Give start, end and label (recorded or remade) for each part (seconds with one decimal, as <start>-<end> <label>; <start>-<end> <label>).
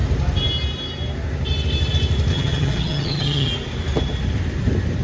0.0-2.3 recorded; 2.3-3.5 remade; 3.5-5.0 recorded